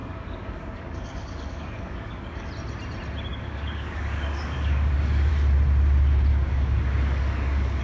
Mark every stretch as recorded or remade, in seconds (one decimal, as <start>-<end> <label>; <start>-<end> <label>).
0.0-2.5 remade; 2.5-3.3 recorded; 3.3-5.3 remade; 5.3-6.3 recorded; 6.3-7.8 remade